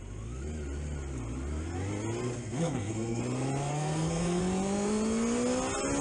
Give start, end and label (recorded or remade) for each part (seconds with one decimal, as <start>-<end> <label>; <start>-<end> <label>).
0.0-2.4 recorded; 2.4-3.2 remade; 3.2-3.7 recorded; 3.7-4.4 remade; 4.4-6.0 recorded